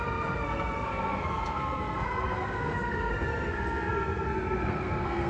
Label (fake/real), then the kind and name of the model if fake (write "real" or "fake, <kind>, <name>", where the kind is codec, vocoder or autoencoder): fake, codec, SNAC